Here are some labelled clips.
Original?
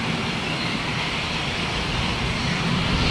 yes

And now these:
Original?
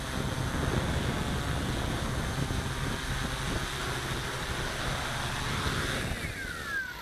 yes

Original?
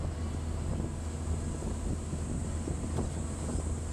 yes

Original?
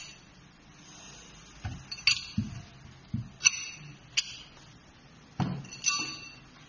yes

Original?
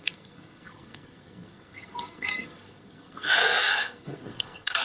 no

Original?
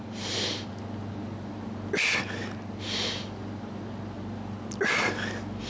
yes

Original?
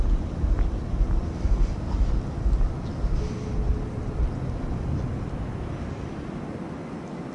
yes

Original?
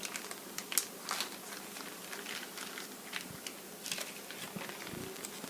yes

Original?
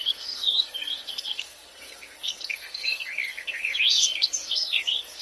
no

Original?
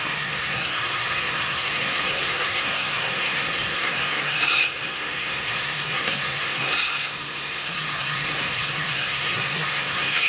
no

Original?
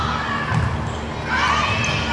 yes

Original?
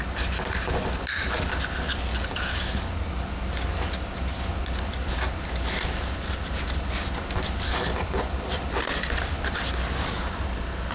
yes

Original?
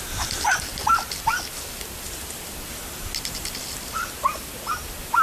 yes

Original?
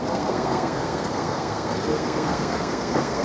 no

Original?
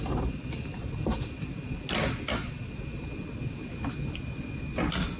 yes